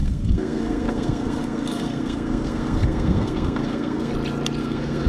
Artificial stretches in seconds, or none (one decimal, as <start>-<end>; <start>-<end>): 0.0-4.1; 4.6-5.1